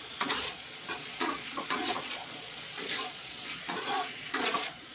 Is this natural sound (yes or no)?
no